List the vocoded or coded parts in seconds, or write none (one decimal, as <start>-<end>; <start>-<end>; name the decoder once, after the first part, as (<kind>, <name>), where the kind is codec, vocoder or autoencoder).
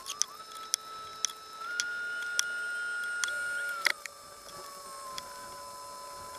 3.9-4.5 (vocoder, BigVGAN v2)